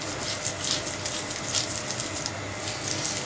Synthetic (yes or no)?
no